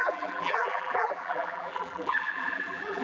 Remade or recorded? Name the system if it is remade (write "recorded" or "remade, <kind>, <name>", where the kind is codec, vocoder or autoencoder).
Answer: remade, vocoder, BigVGAN v2